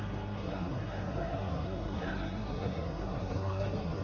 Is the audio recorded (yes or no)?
no